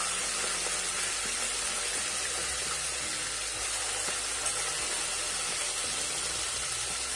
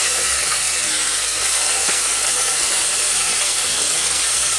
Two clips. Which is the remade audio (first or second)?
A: second